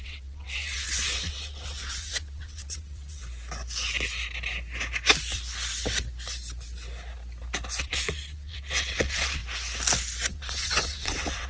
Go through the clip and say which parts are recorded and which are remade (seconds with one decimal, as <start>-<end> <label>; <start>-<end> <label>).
0.0-3.2 remade; 3.2-7.8 recorded; 7.8-9.4 remade; 9.4-10.3 recorded; 10.3-11.5 remade